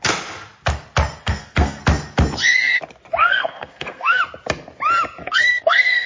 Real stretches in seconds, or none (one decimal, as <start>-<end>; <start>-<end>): 0.0-1.2; 1.8-3.2; 4.2-5.2